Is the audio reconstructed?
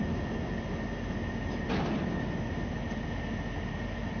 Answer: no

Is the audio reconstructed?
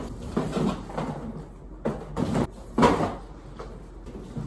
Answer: no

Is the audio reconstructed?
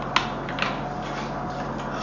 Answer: no